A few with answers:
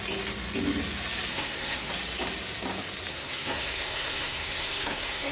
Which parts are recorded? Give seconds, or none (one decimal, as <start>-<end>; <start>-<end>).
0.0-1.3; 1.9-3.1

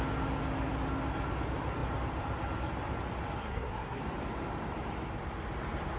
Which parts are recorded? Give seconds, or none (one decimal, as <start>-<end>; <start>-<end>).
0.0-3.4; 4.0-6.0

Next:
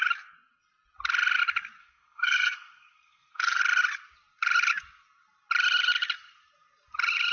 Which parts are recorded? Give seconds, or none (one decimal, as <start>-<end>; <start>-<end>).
0.0-1.8; 3.6-7.3

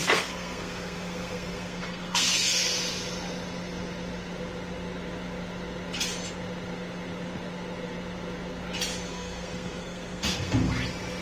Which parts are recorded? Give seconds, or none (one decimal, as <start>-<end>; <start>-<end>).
2.8-9.1; 10.7-11.2